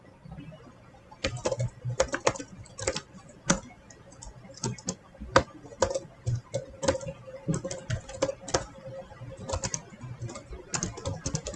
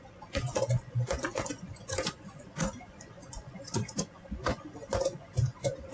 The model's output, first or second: second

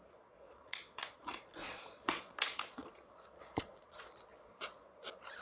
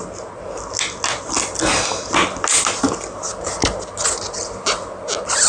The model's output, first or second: first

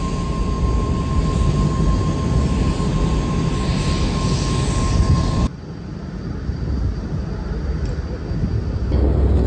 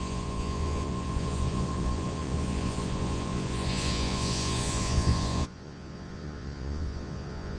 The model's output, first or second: second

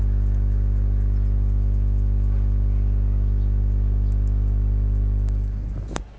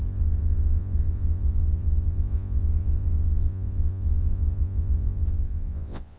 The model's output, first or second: second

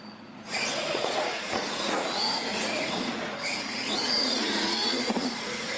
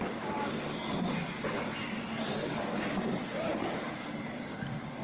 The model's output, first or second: first